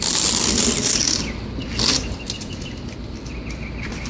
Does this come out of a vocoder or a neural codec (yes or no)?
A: no